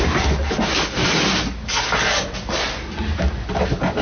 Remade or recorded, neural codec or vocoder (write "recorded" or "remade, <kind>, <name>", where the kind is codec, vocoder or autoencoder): recorded